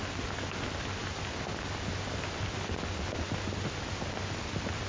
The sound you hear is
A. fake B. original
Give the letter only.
B